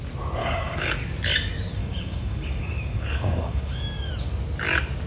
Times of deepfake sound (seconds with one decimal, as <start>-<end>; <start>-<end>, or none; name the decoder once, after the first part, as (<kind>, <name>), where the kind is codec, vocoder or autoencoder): 0.4-0.9 (codec, DAC); 1.8-4.1